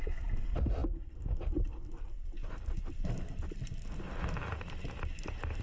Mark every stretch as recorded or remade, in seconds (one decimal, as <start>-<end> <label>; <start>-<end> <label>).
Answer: 0.0-5.6 recorded